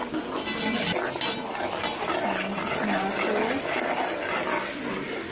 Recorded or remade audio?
recorded